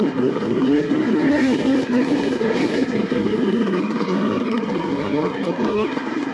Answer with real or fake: fake